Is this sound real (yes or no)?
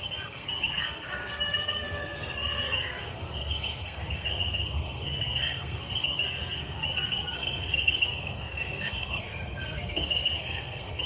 no